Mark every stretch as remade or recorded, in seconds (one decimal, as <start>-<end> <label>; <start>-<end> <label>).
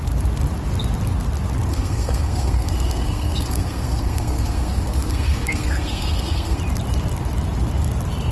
0.0-1.7 recorded; 1.7-6.6 remade; 6.6-8.3 recorded